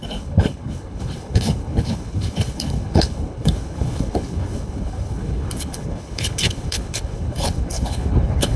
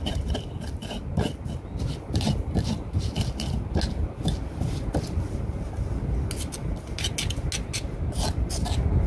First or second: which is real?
second